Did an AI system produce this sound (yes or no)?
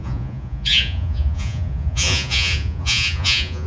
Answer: yes